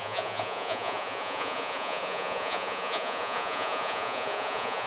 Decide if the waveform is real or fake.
fake